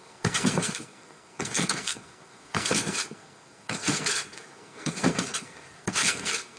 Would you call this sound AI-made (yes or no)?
yes